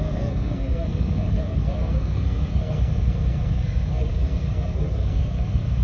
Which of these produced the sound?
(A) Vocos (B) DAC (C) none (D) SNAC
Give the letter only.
D